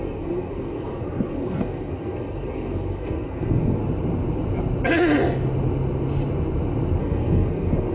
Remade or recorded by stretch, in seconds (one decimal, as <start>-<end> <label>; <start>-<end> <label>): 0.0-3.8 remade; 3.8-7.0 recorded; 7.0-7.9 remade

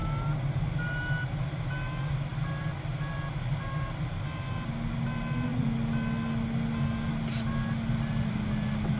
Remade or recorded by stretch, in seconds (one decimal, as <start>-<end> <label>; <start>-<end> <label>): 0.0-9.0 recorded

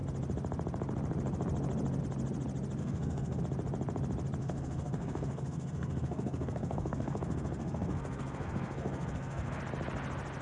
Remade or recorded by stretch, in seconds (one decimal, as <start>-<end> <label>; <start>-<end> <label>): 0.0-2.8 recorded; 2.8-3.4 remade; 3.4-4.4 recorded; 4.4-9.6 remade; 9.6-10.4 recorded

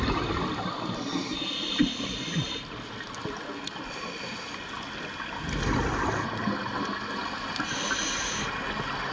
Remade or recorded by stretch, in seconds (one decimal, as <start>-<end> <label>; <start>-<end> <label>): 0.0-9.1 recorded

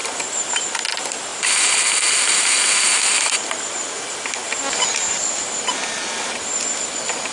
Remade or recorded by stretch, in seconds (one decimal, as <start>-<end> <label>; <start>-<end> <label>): 0.0-7.3 recorded